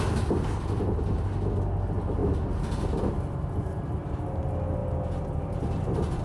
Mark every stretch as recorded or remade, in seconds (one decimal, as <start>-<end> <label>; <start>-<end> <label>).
0.0-6.2 recorded